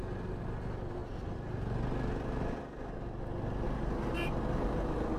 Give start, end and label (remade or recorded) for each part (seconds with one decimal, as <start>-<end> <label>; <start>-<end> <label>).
0.0-5.2 recorded